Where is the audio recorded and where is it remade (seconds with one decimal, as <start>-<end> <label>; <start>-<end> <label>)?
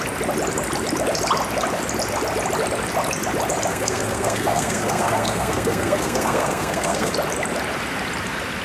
0.0-3.7 recorded; 3.7-7.1 remade; 7.1-8.6 recorded